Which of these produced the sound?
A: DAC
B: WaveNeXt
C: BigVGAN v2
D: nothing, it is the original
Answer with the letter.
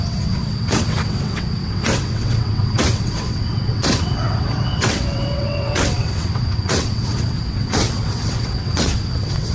B